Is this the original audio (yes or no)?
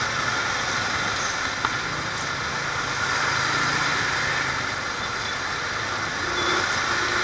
yes